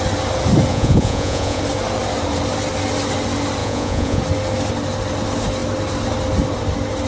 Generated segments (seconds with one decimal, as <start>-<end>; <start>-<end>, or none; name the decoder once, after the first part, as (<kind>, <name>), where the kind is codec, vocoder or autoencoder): 0.7-1.6 (vocoder, Vocos); 3.6-4.2